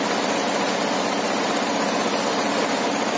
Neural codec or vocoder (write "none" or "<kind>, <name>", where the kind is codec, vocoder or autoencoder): none